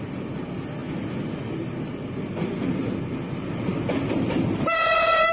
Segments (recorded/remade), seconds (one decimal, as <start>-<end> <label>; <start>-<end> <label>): 0.0-5.3 recorded